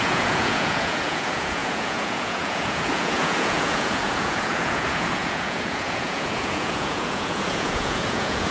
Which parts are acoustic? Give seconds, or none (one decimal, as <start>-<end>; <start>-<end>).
none